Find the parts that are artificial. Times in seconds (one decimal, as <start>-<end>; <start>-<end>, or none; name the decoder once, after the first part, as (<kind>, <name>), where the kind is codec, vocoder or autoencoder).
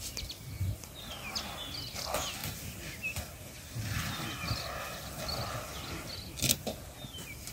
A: none